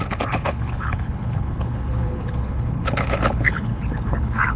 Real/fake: fake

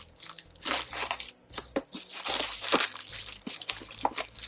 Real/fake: real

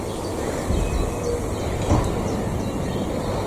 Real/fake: real